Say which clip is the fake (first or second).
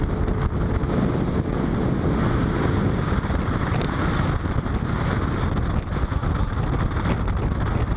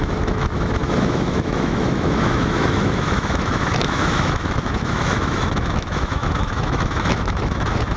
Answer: second